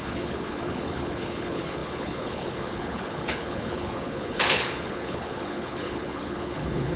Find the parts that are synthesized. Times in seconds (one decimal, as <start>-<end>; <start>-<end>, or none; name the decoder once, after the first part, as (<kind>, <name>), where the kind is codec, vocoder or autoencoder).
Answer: 0.0-7.0 (codec, HILCodec)